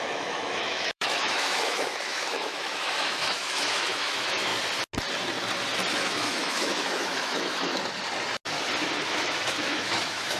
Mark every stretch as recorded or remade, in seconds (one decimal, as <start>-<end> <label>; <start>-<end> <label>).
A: 0.0-4.5 remade; 4.5-6.0 recorded; 6.0-7.7 remade; 7.7-9.0 recorded; 9.0-10.4 remade